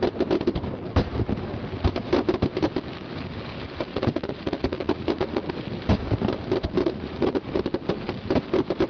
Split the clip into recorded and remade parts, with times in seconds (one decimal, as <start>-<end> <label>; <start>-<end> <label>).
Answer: 0.0-3.9 recorded; 3.9-5.5 remade; 5.5-6.8 recorded; 6.8-7.6 remade; 7.6-8.9 recorded